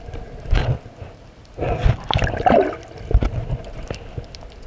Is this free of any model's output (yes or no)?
yes